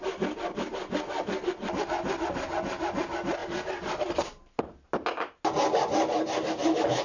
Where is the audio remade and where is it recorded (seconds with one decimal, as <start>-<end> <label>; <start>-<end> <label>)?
0.0-7.0 recorded